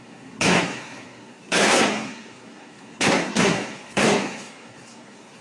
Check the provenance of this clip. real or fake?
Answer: fake